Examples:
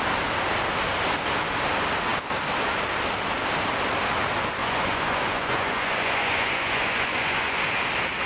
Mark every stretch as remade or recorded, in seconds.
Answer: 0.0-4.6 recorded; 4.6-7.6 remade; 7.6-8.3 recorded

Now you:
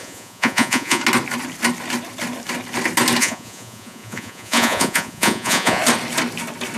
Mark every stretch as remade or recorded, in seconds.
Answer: 0.0-1.0 remade; 1.0-3.2 recorded; 3.2-5.8 remade; 5.8-6.8 recorded

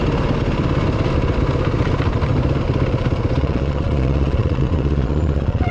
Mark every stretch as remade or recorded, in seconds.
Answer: 0.0-3.4 recorded; 3.4-5.7 remade

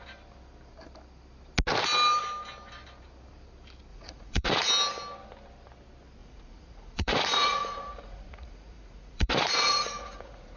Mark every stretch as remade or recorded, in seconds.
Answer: 0.0-3.9 recorded; 3.9-4.7 remade; 4.7-6.2 recorded; 6.2-10.6 remade